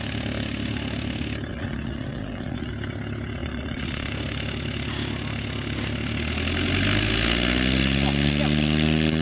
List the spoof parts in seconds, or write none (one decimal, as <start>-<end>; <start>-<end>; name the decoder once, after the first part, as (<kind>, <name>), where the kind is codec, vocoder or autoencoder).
1.5-2.7 (vocoder, Vocos); 3.4-4.1